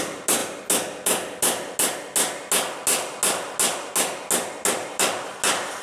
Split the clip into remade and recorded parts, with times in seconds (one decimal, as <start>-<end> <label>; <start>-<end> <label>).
0.0-5.8 recorded